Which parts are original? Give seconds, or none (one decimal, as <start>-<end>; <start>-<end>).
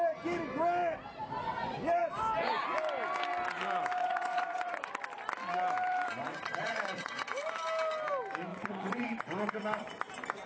0.0-4.0; 4.9-6.3; 7.2-8.5; 9.6-10.5